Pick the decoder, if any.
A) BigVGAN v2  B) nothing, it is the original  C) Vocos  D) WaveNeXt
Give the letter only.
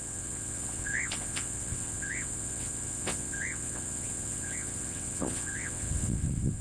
D